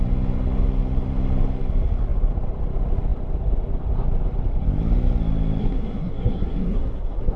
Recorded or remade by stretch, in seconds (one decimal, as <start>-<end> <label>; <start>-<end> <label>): 0.0-5.6 recorded; 5.6-7.4 remade

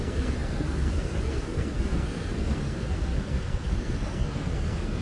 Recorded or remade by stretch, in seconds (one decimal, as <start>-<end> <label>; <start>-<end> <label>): 0.0-5.0 remade